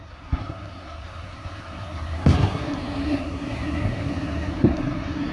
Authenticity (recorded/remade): remade